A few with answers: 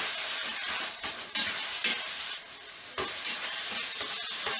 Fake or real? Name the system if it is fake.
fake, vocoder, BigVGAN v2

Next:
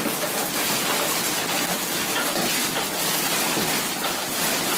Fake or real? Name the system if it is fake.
real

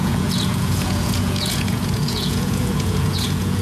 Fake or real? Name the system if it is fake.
fake, vocoder, Vocos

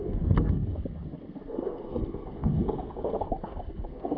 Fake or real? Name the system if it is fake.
fake, codec, SNAC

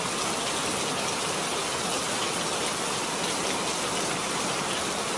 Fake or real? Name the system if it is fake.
real